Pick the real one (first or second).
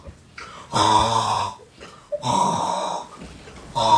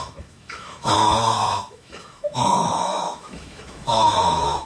first